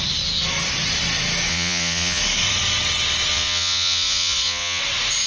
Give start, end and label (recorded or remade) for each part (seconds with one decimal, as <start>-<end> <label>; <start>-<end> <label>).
0.0-1.5 recorded; 1.5-2.2 remade; 2.2-3.3 recorded; 3.3-4.8 remade; 4.8-5.3 recorded